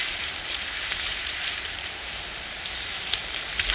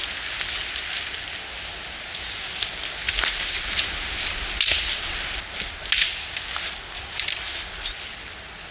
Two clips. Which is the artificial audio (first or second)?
first